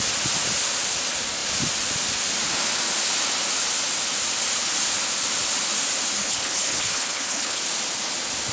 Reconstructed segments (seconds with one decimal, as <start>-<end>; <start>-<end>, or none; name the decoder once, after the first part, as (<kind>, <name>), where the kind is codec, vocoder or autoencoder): 6.2-7.6 (codec, HILCodec)